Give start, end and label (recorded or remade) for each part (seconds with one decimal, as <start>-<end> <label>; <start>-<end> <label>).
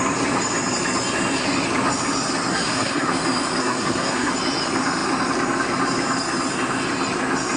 0.0-2.5 recorded; 2.5-3.1 remade; 3.1-3.6 recorded; 3.6-4.3 remade; 4.3-7.6 recorded